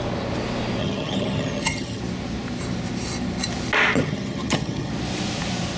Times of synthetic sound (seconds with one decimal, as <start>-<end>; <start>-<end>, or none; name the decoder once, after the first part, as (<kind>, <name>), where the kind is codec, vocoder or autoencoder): 0.8-2.0 (vocoder, HiFi-GAN); 4.0-4.9